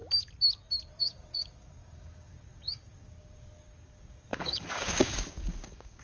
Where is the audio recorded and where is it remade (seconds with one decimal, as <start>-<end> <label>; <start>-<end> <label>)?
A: 0.0-1.0 recorded; 1.0-6.0 remade